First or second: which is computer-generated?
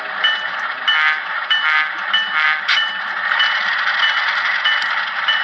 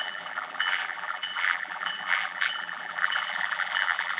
second